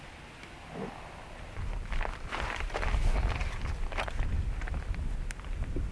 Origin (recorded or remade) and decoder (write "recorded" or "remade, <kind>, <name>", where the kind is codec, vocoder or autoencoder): recorded